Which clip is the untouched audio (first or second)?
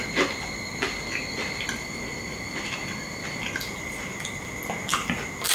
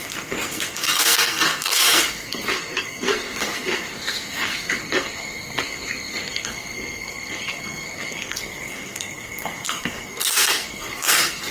first